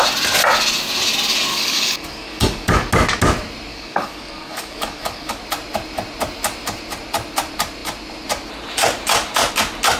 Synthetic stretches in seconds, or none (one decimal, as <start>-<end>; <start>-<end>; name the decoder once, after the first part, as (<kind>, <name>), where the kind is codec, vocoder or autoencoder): 1.5-2.9 (codec, DAC); 3.7-5.4